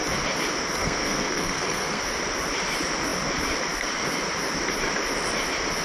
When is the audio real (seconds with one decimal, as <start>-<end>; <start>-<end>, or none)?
0.0-0.8; 2.0-5.8